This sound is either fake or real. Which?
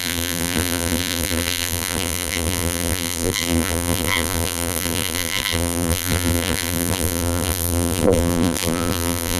fake